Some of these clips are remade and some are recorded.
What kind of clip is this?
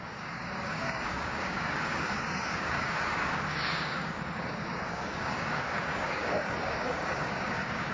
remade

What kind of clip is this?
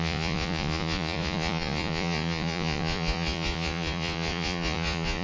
remade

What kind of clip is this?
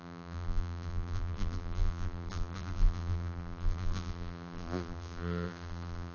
remade